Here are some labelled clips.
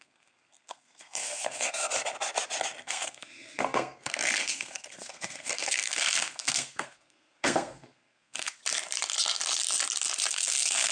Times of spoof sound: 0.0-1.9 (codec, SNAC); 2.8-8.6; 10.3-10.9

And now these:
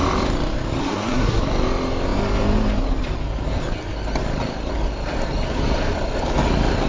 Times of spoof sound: 0.8-1.4 (codec, SNAC)

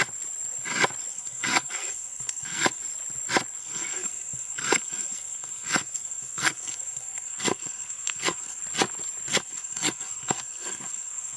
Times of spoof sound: 1.1-2.8 (codec, SNAC); 3.6-8.6; 9.3-11.4

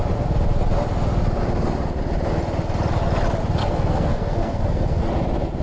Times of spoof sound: 3.6-5.0 (codec, SNAC)